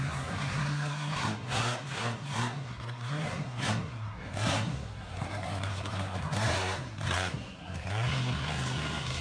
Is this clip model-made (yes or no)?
yes